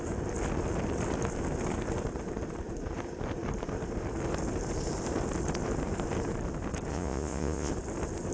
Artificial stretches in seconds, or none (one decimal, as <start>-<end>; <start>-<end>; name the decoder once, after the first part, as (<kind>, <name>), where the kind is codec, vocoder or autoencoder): 6.9-7.7 (vocoder, Vocos)